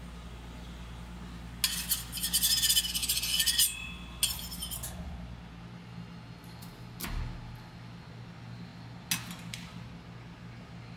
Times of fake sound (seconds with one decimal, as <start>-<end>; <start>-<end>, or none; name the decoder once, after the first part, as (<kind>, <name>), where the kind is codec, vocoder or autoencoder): none